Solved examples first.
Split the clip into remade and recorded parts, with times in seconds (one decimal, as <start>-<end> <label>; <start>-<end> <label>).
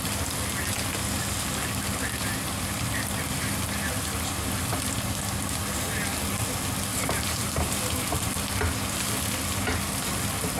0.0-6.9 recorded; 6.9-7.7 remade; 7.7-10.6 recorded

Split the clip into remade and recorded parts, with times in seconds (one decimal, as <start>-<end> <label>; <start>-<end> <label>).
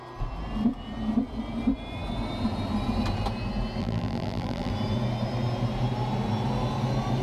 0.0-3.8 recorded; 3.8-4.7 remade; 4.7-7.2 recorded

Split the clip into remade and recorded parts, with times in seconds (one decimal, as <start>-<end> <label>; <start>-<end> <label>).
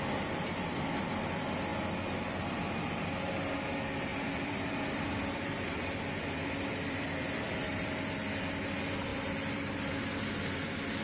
0.0-4.1 recorded; 4.1-7.9 remade; 7.9-9.1 recorded; 9.1-10.0 remade; 10.0-11.0 recorded